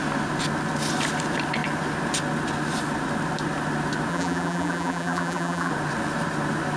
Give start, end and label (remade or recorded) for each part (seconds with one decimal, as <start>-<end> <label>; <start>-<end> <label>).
0.0-4.1 recorded; 4.1-5.7 remade; 5.7-6.8 recorded